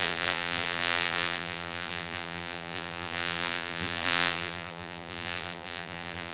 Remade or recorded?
remade